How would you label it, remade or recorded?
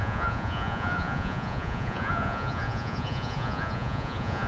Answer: remade